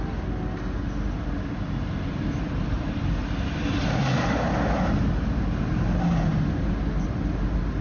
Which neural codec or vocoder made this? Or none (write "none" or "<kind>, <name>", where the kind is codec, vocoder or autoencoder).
none